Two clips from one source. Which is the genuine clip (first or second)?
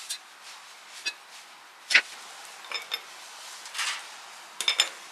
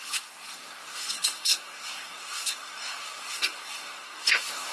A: first